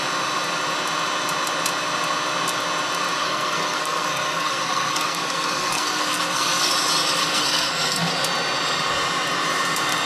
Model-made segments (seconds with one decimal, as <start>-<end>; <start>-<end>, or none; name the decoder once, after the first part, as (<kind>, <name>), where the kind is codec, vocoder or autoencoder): 3.2-6.7 (codec, SNAC); 7.2-8.1